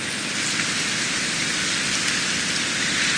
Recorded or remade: recorded